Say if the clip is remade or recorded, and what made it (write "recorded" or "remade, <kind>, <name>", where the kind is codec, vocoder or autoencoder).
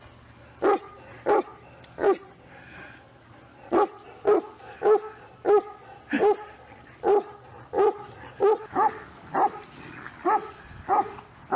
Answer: recorded